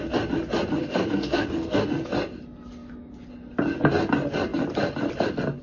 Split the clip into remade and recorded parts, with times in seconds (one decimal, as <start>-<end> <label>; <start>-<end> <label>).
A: 0.0-0.8 recorded; 0.8-1.9 remade; 1.9-5.6 recorded